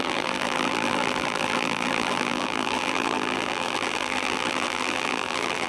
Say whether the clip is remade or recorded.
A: remade